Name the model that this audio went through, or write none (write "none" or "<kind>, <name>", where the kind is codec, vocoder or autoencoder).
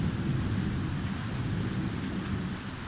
none